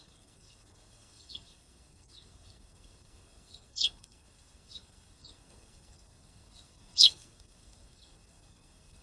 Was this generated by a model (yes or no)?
yes